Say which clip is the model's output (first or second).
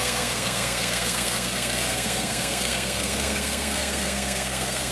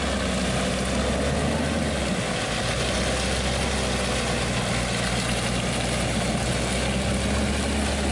first